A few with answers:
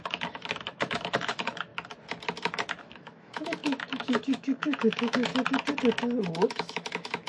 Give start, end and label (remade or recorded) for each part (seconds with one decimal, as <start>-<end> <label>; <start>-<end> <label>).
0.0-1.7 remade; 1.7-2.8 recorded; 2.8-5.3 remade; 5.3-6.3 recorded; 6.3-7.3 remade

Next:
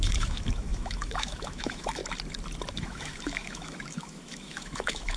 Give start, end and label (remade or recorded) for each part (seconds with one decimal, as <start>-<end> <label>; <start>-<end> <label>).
0.0-2.0 remade; 2.0-2.7 recorded; 2.7-5.2 remade

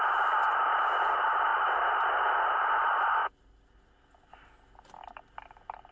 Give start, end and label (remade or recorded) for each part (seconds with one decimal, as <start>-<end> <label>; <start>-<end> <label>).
0.0-5.9 recorded

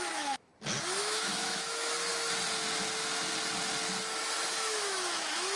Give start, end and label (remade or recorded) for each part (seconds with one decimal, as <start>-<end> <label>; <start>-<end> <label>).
0.0-0.5 remade; 0.5-1.0 recorded; 1.0-2.1 remade; 2.1-4.5 recorded; 4.5-5.6 remade